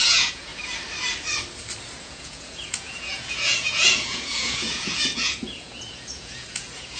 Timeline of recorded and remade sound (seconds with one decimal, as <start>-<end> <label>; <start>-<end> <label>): 0.0-0.5 remade; 0.5-2.0 recorded; 2.0-7.0 remade